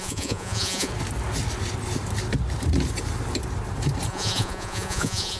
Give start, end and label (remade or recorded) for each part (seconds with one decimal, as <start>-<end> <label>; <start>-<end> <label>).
0.0-0.9 remade; 0.9-4.1 recorded; 4.1-5.4 remade